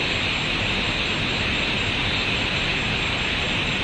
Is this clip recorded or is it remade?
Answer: recorded